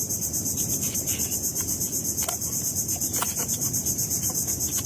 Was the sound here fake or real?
real